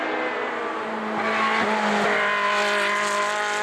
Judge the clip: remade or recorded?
recorded